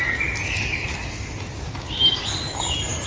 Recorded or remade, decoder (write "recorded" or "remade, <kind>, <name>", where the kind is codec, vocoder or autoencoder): recorded